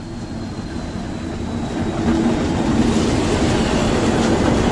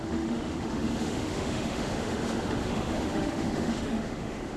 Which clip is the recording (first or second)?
first